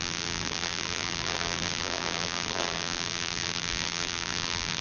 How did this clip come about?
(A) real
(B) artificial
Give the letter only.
B